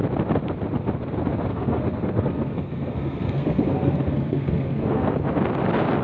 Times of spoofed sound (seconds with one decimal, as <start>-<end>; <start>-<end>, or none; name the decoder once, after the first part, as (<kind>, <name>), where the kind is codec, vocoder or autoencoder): 1.5-5.1 (codec, SNAC)